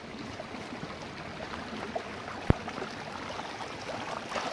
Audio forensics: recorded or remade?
recorded